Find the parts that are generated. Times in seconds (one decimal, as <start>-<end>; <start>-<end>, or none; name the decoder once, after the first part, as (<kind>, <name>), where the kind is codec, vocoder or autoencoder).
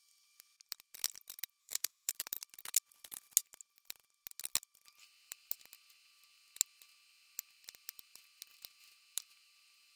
1.6-2.1 (autoencoder, DAC-VAE)